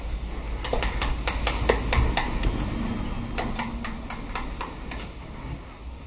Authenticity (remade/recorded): recorded